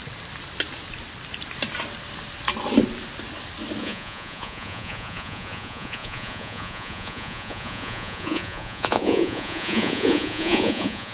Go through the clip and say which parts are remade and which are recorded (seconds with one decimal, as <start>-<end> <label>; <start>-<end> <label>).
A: 0.0-3.8 recorded; 3.8-11.1 remade